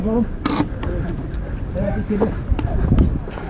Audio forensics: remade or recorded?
recorded